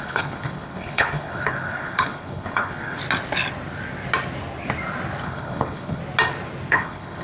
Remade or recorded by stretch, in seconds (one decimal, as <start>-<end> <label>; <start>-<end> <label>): 0.0-3.0 remade; 3.0-5.2 recorded; 5.2-6.0 remade; 6.0-6.7 recorded; 6.7-7.2 remade